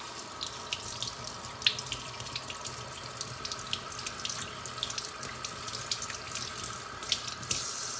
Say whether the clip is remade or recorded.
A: recorded